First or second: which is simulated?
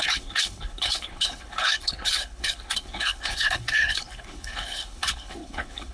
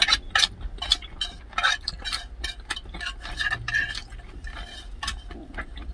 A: first